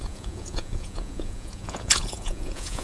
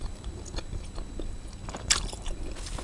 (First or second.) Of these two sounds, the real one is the second